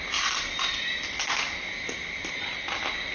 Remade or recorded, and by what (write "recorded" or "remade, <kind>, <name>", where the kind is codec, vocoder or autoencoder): recorded